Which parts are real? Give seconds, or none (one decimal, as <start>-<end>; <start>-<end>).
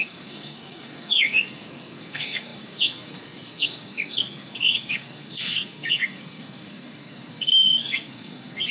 none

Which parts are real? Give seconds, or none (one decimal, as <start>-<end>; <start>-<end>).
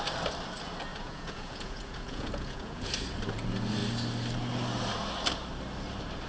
0.0-0.9; 2.9-6.3